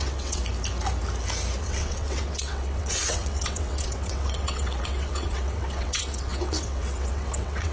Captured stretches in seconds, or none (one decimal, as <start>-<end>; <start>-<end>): 0.4-1.6